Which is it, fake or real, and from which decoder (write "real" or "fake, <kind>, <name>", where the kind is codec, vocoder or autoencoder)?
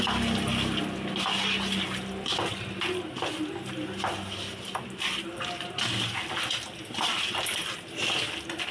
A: real